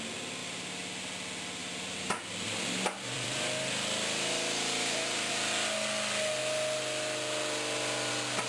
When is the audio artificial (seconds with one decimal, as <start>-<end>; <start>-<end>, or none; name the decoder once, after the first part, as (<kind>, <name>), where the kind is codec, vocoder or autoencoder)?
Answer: 0.4-1.0 (vocoder, BigVGAN v2); 1.6-5.3